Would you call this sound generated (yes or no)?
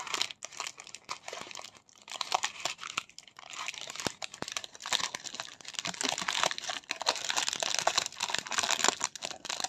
no